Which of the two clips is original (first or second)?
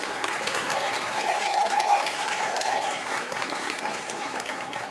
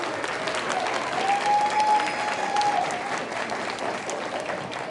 second